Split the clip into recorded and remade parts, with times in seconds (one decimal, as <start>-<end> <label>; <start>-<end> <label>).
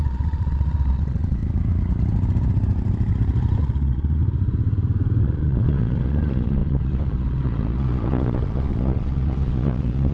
0.0-1.4 remade; 1.4-3.6 recorded; 3.6-4.2 remade; 4.2-5.2 recorded; 5.2-10.1 remade